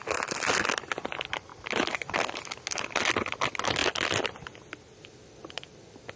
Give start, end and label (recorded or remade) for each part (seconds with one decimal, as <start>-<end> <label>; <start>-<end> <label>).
0.0-6.2 recorded